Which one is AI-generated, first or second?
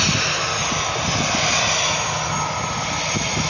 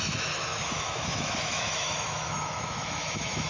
second